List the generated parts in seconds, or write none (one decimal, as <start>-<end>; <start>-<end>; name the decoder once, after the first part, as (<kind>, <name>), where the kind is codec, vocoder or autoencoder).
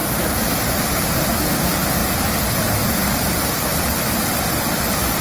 0.0-1.4 (vocoder, BigVGAN v2); 2.0-5.2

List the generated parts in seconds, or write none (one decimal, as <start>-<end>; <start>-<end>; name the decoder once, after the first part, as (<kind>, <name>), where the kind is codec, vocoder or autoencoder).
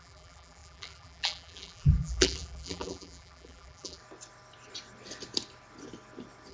0.0-4.0 (vocoder, BigVGAN v2)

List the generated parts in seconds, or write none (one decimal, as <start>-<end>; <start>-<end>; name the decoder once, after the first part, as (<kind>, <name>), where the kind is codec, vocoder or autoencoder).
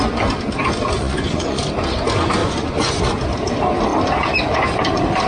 1.0-1.6 (vocoder, Vocos); 2.4-3.0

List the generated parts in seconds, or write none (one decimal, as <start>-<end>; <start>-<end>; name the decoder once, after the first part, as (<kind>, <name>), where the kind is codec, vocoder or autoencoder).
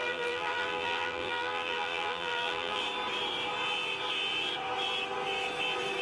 0.0-2.8 (vocoder, BigVGAN v2)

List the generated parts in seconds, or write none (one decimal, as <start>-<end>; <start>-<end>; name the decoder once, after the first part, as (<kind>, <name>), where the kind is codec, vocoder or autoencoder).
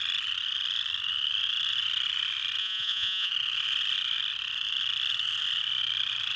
2.6-3.3 (vocoder, Vocos)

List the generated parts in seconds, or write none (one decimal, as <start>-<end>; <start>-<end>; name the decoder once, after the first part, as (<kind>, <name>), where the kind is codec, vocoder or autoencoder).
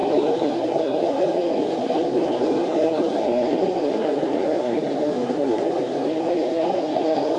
0.0-7.4 (codec, SNAC)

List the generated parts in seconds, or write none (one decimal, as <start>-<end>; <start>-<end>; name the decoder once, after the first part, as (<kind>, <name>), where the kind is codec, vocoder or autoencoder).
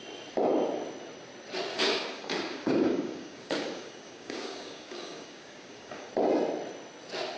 1.7-6.1 (codec, DAC)